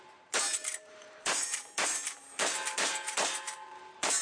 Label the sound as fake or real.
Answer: fake